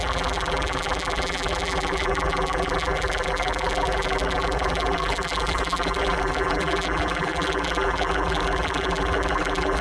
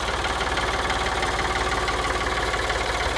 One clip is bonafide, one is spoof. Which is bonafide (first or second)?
second